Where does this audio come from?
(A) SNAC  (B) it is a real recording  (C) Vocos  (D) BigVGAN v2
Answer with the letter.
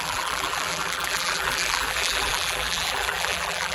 D